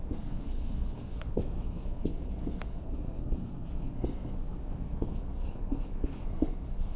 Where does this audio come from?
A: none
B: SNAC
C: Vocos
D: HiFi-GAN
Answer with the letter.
B